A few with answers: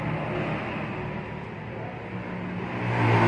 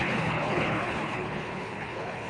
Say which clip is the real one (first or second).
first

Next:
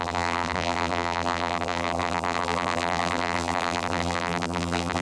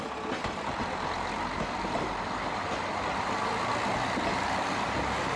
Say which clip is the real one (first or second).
second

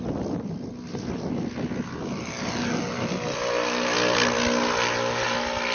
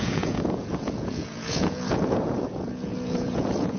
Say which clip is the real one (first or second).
first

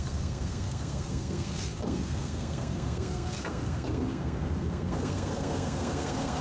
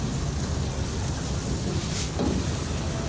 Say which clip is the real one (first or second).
second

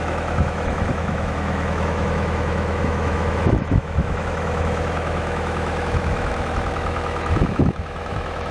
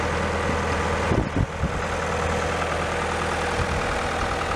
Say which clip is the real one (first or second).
second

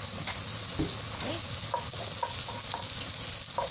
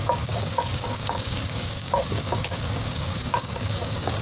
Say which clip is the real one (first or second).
first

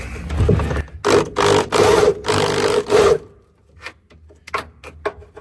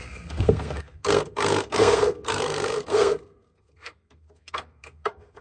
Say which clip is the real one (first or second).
first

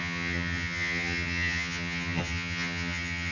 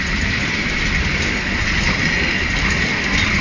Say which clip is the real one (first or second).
second